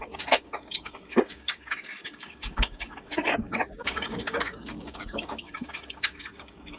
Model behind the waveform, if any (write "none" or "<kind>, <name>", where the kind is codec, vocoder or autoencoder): codec, DAC